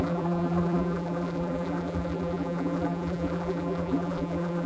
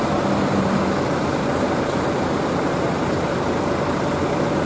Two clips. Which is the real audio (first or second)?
second